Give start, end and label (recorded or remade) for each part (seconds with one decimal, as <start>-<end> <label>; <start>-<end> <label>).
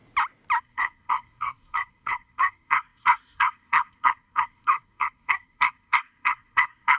0.0-0.6 recorded; 0.6-7.0 remade